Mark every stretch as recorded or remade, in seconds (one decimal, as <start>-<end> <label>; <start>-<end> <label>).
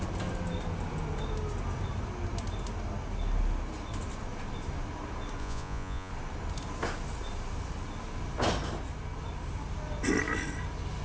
0.0-5.4 recorded; 5.4-6.1 remade; 6.1-11.0 recorded